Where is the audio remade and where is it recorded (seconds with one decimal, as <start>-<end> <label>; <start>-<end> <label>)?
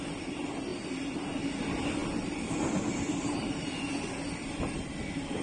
0.0-5.4 recorded